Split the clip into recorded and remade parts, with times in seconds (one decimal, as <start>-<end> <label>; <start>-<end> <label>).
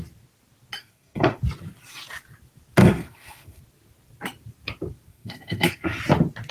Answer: 0.0-0.8 recorded; 0.8-1.4 remade; 1.4-2.8 recorded; 2.8-3.6 remade; 3.6-5.1 recorded; 5.1-6.0 remade; 6.0-6.5 recorded